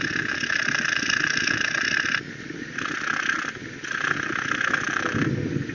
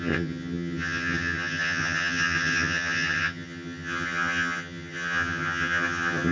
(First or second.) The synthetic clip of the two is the second